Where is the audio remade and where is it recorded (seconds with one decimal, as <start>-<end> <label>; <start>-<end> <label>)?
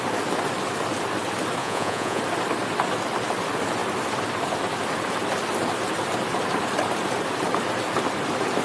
0.0-1.6 recorded; 1.6-2.2 remade; 2.2-8.6 recorded